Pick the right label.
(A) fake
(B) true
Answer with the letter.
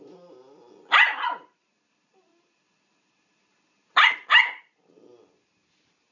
B